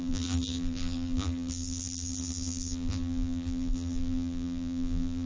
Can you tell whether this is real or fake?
fake